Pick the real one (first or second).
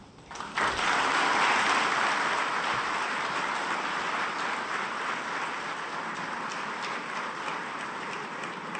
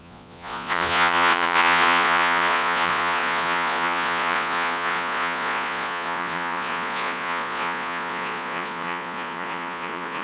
first